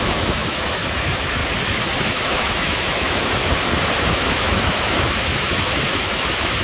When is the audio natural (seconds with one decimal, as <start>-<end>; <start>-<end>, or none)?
1.4-2.0; 3.4-4.0